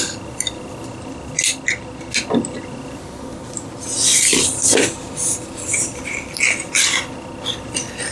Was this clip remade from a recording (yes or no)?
no